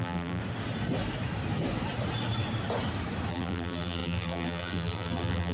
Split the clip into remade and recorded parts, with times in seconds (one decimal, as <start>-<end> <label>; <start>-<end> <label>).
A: 0.0-0.4 remade; 0.4-3.3 recorded; 3.3-5.5 remade